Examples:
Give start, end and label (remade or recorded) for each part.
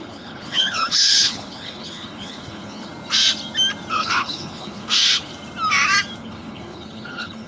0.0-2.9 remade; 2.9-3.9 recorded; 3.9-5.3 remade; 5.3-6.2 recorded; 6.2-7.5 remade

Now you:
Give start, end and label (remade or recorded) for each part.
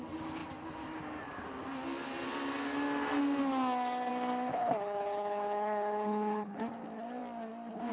0.0-4.5 recorded; 4.5-6.6 remade; 6.6-7.9 recorded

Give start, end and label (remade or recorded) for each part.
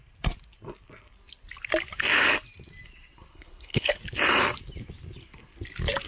0.0-3.3 recorded; 3.3-4.0 remade; 4.0-6.1 recorded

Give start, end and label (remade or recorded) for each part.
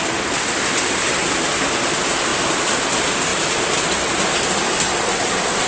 0.0-5.7 recorded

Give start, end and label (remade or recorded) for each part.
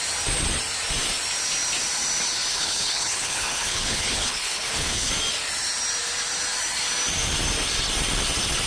0.0-2.5 recorded; 2.5-5.1 remade; 5.1-8.7 recorded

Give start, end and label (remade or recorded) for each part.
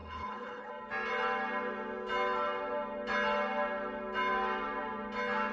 0.0-0.7 remade; 0.7-5.5 recorded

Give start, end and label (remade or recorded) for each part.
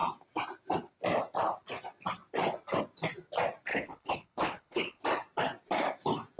0.0-3.7 recorded; 3.7-5.0 remade; 5.0-6.4 recorded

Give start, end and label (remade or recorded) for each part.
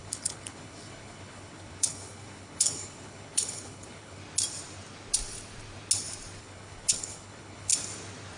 0.0-4.2 remade; 4.2-6.4 recorded; 6.4-7.7 remade; 7.7-8.4 recorded